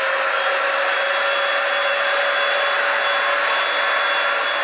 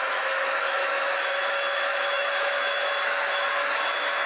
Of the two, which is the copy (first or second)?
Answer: second